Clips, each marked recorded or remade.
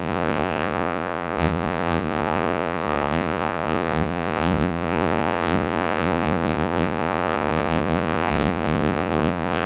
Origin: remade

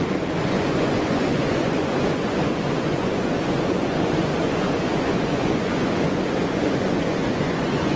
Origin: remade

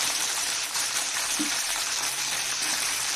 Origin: remade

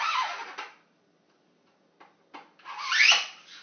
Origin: recorded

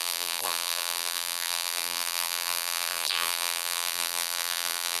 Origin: remade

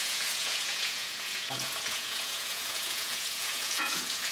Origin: remade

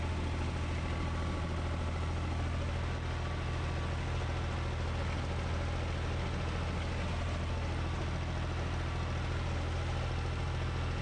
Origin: recorded